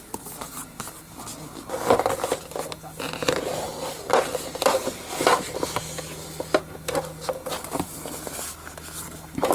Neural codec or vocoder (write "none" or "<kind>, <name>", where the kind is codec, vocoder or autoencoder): none